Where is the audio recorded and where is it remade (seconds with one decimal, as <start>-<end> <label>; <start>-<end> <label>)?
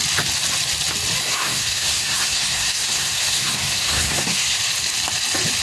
0.0-1.2 recorded; 1.2-4.6 remade; 4.6-5.6 recorded